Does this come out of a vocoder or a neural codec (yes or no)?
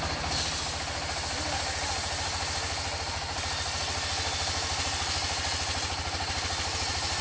no